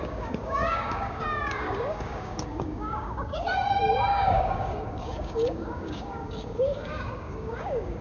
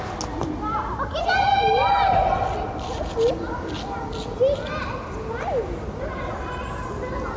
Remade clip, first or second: first